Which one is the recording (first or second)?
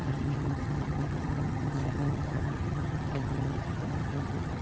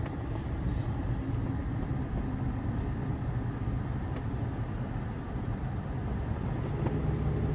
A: second